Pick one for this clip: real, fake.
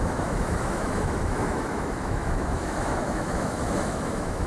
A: fake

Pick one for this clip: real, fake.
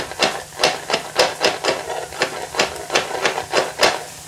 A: real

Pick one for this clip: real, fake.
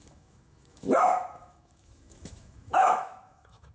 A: fake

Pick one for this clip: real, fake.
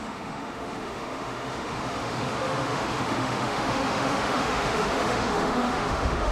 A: fake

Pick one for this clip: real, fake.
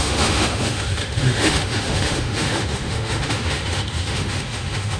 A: fake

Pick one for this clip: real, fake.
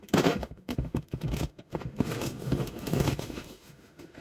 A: fake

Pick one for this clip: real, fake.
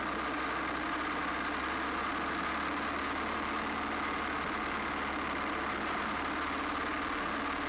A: real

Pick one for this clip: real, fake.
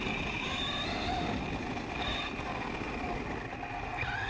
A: real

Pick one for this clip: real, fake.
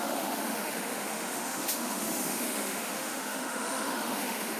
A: fake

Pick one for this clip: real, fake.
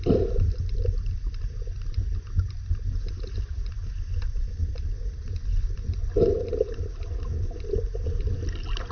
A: real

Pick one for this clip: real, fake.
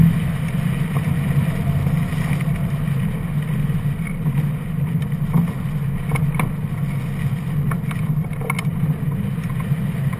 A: real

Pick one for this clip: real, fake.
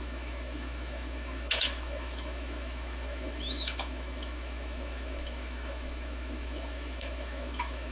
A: fake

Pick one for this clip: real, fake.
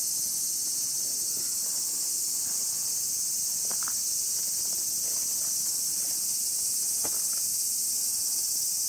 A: real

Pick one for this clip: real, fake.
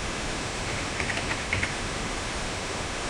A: fake